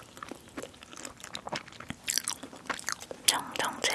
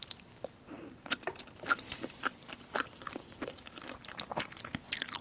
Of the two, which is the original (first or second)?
first